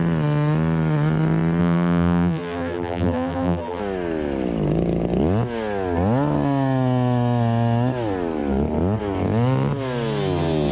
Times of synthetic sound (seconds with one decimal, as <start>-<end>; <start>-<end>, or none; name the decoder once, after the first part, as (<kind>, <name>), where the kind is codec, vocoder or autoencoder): 1.6-3.8 (vocoder, BigVGAN v2)